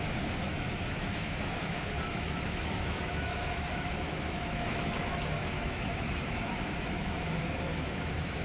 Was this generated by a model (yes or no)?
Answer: yes